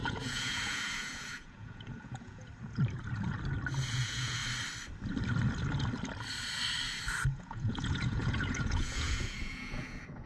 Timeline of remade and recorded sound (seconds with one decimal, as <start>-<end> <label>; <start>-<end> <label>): 0.0-2.5 remade; 2.5-3.9 recorded; 3.9-4.4 remade; 4.4-7.2 recorded; 7.2-10.3 remade